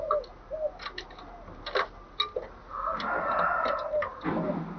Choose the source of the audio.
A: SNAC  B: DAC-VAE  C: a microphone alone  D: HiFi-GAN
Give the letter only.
C